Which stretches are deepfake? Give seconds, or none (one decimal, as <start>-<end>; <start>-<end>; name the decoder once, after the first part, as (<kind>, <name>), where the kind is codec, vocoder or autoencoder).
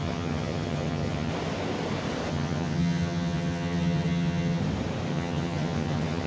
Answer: 0.0-1.3 (vocoder, HiFi-GAN); 2.3-4.6; 5.1-6.3